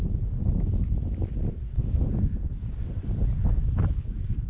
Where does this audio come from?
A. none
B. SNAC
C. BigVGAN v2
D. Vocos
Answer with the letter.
A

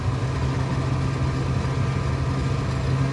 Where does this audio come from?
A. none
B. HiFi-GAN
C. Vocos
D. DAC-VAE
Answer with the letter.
A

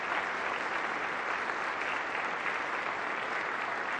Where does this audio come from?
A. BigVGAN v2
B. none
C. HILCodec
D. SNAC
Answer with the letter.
B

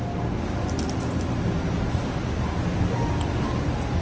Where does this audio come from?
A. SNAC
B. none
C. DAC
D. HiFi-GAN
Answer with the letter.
B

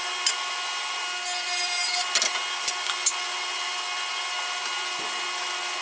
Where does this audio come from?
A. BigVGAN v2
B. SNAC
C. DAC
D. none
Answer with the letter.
D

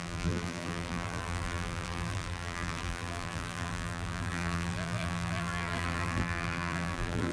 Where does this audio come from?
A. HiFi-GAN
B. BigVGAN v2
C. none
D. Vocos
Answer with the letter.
B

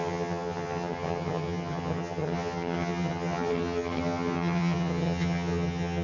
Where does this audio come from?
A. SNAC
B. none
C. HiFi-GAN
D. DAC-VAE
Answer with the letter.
C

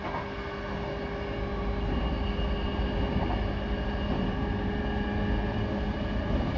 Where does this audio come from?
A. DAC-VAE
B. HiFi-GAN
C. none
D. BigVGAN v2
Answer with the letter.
C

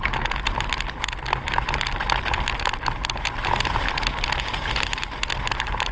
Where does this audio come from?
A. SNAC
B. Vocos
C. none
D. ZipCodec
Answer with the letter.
C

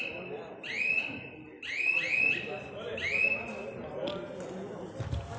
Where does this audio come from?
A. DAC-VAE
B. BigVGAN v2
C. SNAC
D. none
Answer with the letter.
D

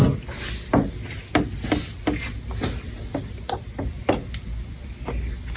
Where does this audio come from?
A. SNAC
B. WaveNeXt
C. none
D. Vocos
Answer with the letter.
C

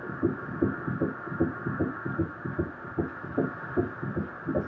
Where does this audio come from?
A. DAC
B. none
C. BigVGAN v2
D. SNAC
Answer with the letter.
B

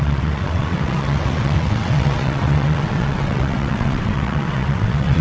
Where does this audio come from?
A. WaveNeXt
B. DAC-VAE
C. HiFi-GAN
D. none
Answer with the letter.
A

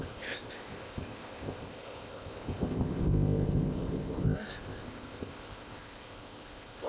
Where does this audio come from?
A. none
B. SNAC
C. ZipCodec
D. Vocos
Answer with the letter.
C